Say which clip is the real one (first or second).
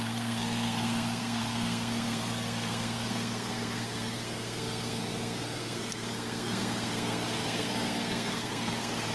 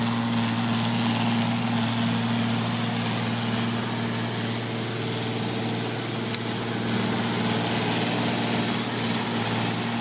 second